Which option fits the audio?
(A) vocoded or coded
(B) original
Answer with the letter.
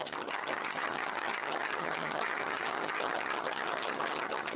A